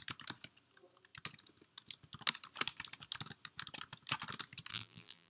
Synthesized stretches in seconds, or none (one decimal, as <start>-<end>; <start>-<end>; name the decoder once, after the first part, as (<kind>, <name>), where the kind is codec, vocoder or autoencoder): 4.7-5.3 (vocoder, BigVGAN v2)